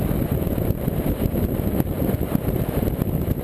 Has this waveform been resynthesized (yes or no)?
no